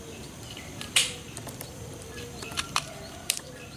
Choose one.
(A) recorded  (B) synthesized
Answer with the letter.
B